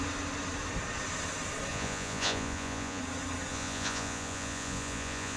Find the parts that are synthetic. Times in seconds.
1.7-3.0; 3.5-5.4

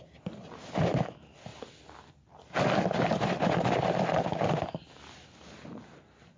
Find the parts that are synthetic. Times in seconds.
none